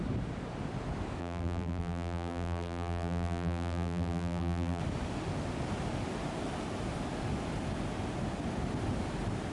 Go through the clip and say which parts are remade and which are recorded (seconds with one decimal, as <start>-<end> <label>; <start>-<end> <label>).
0.0-1.2 recorded; 1.2-4.8 remade; 4.8-9.5 recorded